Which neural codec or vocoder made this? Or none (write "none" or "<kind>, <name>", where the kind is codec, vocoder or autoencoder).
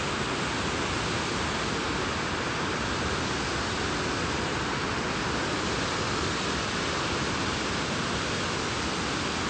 none